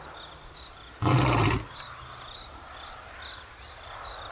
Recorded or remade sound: recorded